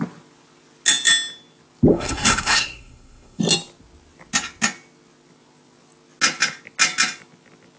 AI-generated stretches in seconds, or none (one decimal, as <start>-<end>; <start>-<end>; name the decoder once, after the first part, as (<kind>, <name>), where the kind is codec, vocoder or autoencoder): 1.9-3.4 (codec, SNAC)